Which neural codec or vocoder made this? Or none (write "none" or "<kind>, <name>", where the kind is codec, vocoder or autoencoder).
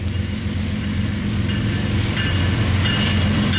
none